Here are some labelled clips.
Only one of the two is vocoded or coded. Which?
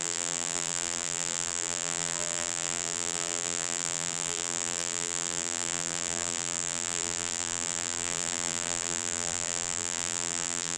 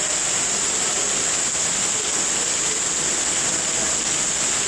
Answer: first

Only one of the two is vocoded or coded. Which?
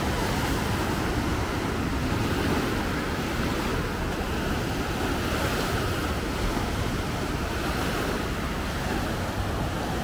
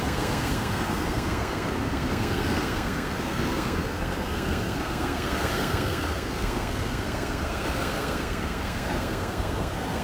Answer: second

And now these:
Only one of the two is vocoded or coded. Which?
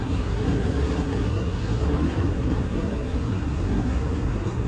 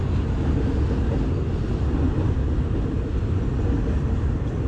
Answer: first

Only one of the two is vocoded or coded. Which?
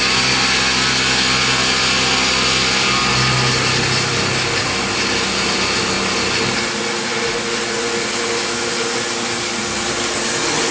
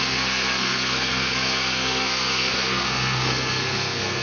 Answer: second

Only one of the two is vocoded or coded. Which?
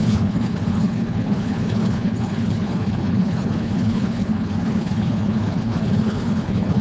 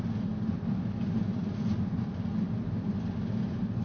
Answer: first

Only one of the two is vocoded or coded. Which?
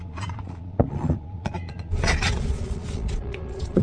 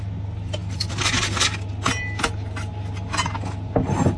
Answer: first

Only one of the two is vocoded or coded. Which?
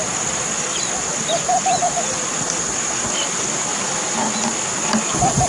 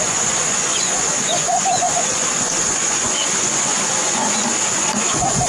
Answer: second